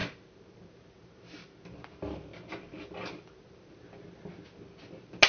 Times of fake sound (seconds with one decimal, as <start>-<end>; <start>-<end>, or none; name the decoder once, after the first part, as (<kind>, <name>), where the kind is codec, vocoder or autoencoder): none